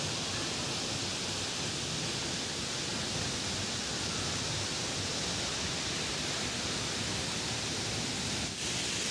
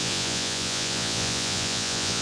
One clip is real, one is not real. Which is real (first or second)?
first